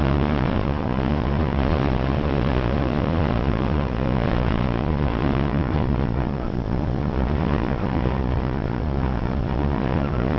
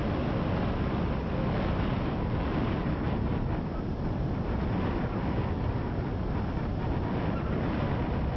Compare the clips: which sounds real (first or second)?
second